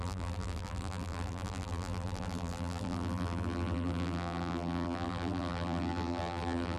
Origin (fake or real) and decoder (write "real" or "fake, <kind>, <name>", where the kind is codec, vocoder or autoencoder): fake, vocoder, BigVGAN v2